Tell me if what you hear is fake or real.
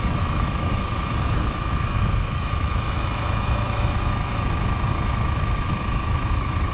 fake